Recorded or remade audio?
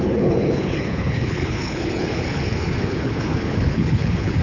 remade